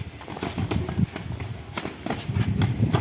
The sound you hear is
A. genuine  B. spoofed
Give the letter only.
B